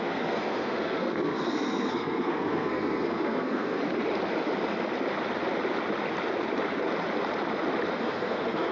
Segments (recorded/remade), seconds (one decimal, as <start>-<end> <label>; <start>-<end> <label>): 0.0-3.8 remade; 3.8-8.0 recorded; 8.0-8.7 remade